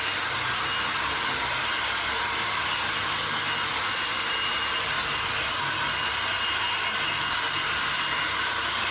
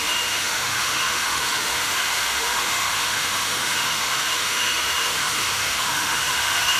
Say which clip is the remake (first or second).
second